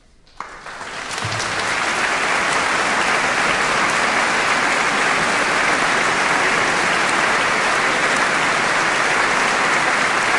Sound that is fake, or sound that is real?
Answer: real